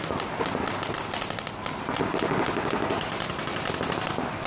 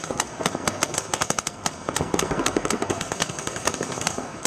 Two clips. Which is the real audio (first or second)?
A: first